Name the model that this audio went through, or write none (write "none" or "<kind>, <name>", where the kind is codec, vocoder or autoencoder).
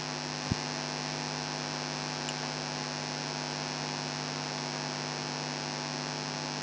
none